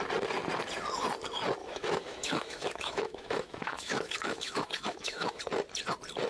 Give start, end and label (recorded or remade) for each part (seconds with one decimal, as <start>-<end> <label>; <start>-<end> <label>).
0.0-1.6 recorded; 1.6-5.4 remade; 5.4-6.3 recorded